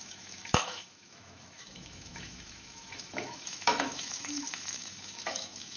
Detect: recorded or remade remade